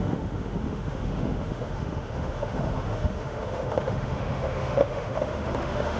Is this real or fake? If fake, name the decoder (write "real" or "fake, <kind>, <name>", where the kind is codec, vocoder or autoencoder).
fake, autoencoder, DAC-VAE